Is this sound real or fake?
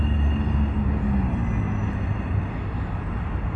real